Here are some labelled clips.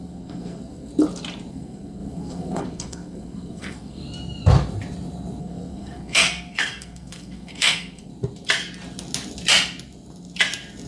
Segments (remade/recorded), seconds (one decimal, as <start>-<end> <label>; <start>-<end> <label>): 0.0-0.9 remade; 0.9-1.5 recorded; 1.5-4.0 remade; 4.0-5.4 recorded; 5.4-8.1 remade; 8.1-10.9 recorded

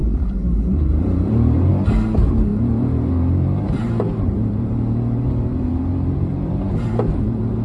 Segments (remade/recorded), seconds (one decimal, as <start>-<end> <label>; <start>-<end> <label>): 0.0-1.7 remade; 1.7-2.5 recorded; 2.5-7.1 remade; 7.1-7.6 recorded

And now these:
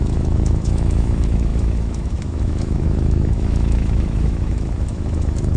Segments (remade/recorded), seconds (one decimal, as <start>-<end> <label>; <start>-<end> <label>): 0.0-5.6 remade